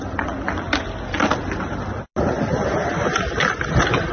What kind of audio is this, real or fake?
real